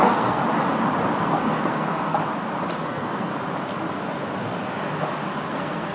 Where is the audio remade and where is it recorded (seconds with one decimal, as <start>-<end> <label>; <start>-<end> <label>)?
0.0-0.4 remade; 0.4-1.2 recorded; 1.2-2.2 remade; 2.2-2.8 recorded; 2.8-3.3 remade; 3.3-5.5 recorded; 5.5-5.9 remade